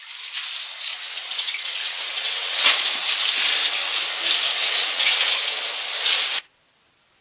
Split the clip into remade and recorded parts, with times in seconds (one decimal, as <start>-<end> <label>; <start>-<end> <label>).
0.0-0.9 recorded; 0.9-2.7 remade; 2.7-4.5 recorded; 4.5-5.1 remade; 5.1-7.2 recorded